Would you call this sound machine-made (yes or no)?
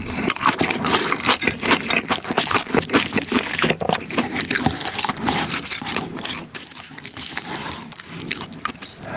yes